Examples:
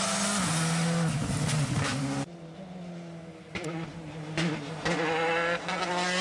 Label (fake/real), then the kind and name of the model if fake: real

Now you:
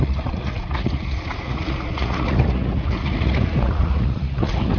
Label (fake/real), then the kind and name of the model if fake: fake, vocoder, Vocos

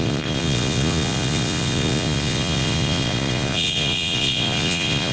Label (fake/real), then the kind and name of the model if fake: fake, vocoder, Vocos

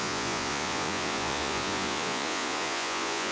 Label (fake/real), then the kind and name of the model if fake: fake, vocoder, Vocos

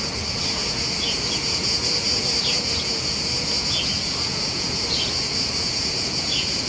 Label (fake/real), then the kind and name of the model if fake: fake, vocoder, Vocos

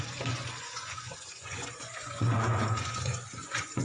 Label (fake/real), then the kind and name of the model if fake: fake, vocoder, Vocos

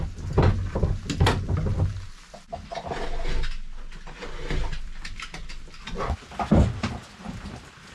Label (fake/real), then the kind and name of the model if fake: real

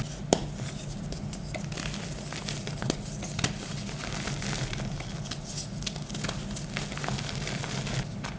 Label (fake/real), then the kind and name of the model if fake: real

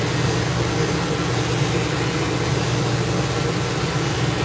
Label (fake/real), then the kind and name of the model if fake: real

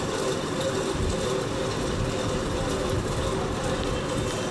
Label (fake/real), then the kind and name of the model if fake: real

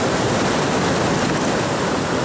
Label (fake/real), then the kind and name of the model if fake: real